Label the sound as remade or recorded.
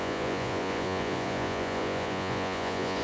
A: remade